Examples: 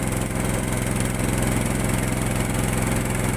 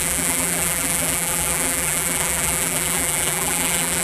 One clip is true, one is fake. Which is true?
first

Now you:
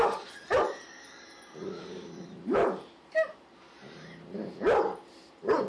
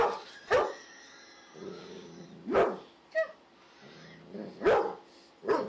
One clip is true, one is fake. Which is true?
second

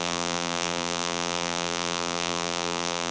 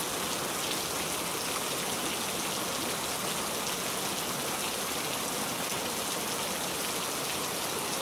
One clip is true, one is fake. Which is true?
second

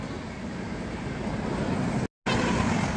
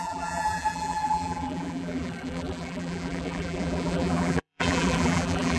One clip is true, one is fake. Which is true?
first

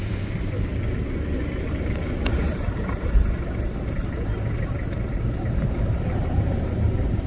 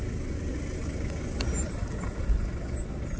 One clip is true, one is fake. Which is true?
second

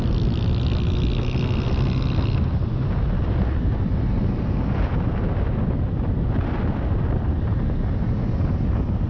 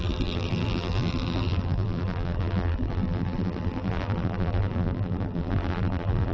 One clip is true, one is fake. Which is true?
first